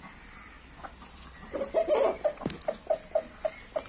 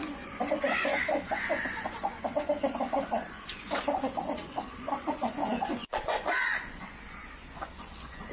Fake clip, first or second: second